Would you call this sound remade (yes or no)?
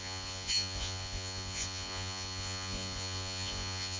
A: yes